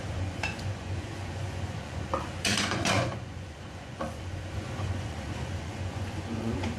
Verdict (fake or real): fake